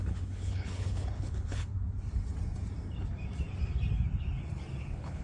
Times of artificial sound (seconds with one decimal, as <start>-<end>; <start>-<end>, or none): 0.0-1.7; 4.8-5.2